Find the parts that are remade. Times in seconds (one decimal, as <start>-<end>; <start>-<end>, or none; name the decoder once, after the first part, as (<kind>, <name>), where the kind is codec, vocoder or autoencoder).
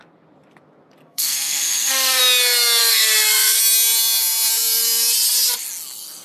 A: 1.0-2.2 (codec, SNAC); 2.8-3.6